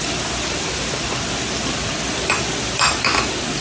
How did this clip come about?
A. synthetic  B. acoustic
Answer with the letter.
B